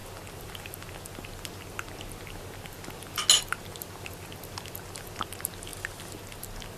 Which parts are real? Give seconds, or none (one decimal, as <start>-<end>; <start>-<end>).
0.0-6.8